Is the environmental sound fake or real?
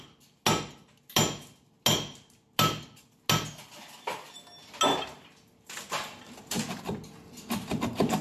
real